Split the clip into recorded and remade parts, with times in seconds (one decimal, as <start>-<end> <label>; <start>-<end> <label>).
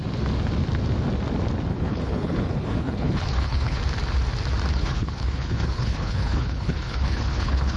0.0-1.7 recorded; 1.7-3.8 remade; 3.8-4.7 recorded; 4.7-7.8 remade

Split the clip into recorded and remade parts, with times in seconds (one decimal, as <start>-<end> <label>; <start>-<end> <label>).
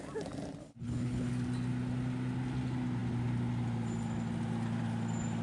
0.0-0.6 recorded; 0.6-1.3 remade; 1.3-5.4 recorded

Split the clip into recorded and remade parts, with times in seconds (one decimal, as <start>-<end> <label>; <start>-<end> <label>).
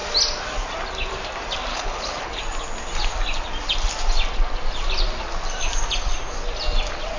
0.0-1.7 recorded; 1.7-2.4 remade; 2.4-7.2 recorded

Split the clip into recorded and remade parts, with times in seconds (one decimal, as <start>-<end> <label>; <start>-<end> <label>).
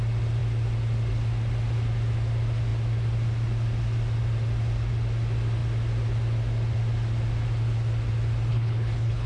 0.0-8.5 recorded; 8.5-9.3 remade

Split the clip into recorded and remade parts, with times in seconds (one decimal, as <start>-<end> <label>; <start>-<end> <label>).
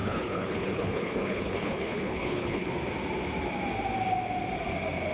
0.0-2.7 remade; 2.7-5.1 recorded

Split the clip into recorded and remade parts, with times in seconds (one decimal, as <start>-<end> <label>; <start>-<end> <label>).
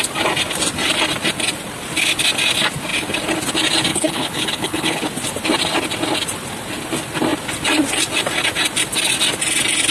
0.0-3.9 recorded; 3.9-5.0 remade; 5.0-9.9 recorded